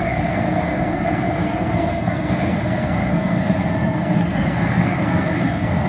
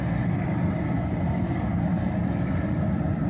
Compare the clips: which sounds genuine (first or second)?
second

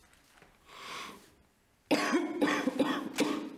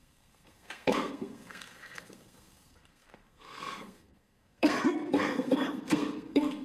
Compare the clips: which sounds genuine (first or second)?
first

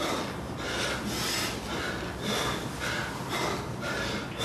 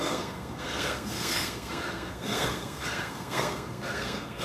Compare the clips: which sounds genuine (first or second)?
first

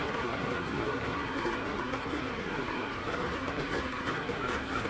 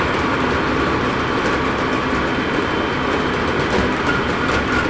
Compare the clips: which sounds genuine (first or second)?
second